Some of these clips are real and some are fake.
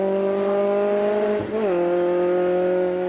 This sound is real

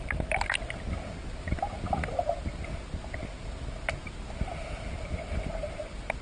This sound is real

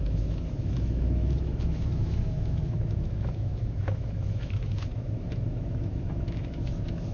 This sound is fake